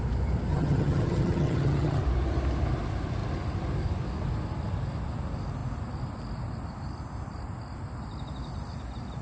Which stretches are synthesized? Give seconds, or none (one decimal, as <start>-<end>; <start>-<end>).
0.5-2.0